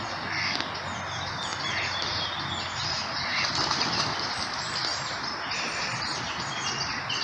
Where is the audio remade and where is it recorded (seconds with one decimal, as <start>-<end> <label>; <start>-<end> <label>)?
0.0-3.3 recorded; 3.3-6.4 remade; 6.4-7.2 recorded